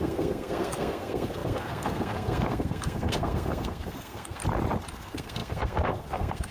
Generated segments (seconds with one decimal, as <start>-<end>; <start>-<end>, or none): 0.0-4.4; 4.9-6.5